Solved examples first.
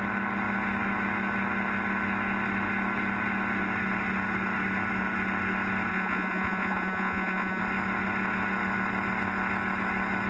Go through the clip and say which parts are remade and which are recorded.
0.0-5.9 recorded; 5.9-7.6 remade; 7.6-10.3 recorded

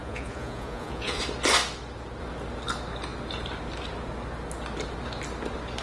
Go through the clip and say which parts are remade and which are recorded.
0.0-1.2 remade; 1.2-5.8 recorded